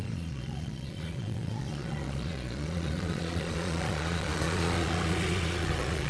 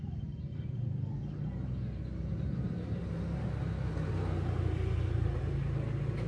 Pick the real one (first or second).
second